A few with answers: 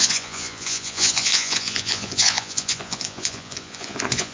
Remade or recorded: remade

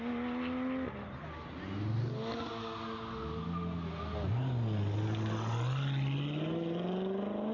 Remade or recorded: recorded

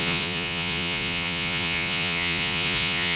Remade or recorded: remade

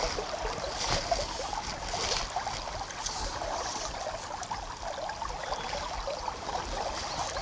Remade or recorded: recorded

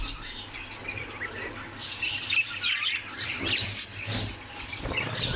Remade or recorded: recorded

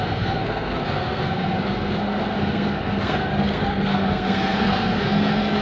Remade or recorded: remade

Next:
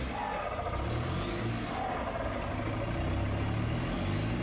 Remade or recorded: recorded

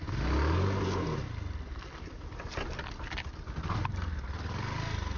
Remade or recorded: recorded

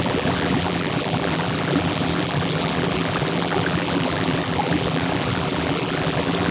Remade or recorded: remade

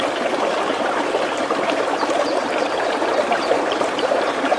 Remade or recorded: remade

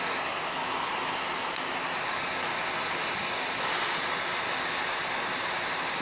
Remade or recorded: recorded